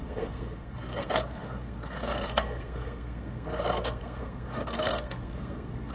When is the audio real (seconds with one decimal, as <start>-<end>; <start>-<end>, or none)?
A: none